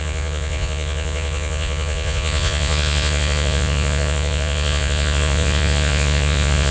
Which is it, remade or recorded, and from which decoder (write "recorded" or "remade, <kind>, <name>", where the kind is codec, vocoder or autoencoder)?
remade, vocoder, Vocos